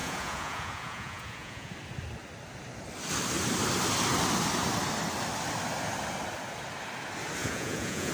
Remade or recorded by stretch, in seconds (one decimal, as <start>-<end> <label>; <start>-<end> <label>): 0.0-1.7 remade; 1.7-7.4 recorded; 7.4-8.1 remade